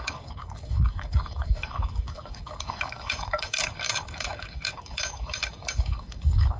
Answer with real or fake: fake